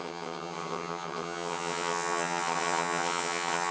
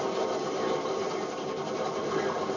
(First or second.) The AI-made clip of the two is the first